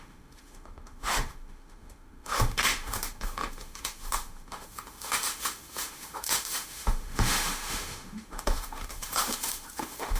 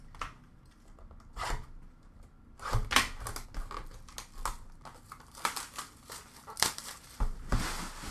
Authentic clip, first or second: second